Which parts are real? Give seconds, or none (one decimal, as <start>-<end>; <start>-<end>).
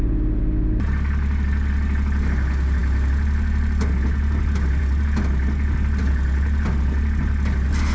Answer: 0.0-7.9